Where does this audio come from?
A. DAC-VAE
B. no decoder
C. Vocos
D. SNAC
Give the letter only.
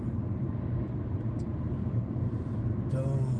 B